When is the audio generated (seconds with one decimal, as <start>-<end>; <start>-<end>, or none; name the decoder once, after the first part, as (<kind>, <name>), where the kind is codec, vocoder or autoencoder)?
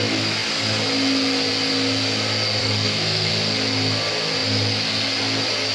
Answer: 2.6-3.3 (codec, SNAC)